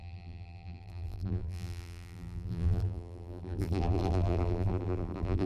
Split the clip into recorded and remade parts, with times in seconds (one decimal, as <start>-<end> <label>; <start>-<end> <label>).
0.0-5.5 remade